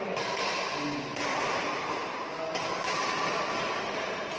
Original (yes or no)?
yes